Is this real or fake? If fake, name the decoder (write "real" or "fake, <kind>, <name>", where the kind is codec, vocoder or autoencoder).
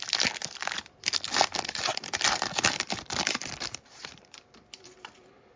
fake, vocoder, BigVGAN v2